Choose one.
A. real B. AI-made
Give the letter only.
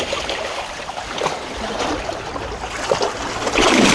A